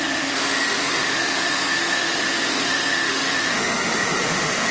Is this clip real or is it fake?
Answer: fake